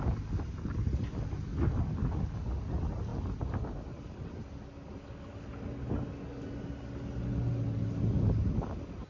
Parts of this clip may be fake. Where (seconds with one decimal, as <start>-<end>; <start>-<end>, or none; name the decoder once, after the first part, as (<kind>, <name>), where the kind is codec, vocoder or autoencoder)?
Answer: none